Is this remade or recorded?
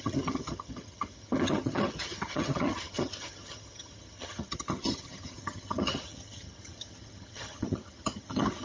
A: remade